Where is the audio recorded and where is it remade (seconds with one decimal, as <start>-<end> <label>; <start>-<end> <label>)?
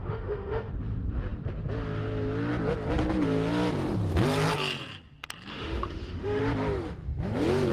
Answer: 0.0-0.7 remade; 0.7-5.5 recorded; 5.5-6.4 remade; 6.4-7.7 recorded